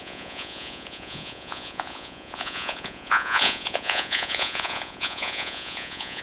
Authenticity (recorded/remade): remade